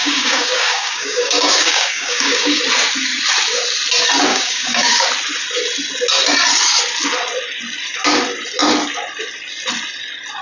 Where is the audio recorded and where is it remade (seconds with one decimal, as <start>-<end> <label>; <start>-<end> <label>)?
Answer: 0.0-2.6 remade; 2.6-4.3 recorded; 4.3-5.0 remade; 5.0-10.4 recorded